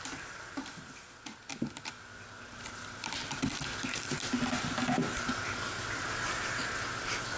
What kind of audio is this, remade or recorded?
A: recorded